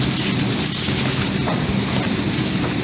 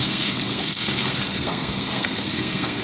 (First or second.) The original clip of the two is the first